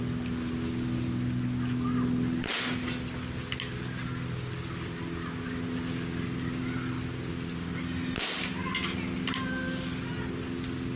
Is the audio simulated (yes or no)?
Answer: no